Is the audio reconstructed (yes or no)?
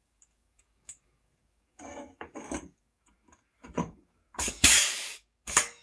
yes